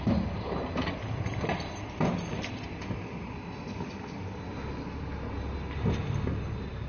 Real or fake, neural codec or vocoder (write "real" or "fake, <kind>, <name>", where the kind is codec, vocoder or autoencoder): real